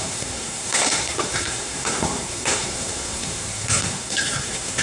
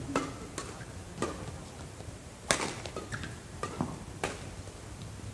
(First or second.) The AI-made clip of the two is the first